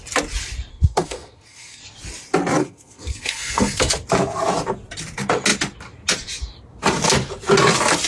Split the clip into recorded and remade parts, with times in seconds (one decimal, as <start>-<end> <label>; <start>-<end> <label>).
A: 0.0-0.7 recorded; 0.7-1.8 remade; 1.8-2.6 recorded; 2.6-3.9 remade; 3.9-8.1 recorded